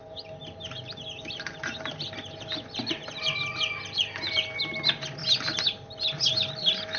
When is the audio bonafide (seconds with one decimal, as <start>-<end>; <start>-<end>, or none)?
5.2-6.3